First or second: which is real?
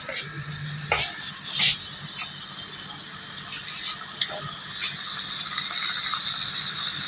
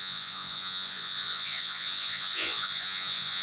first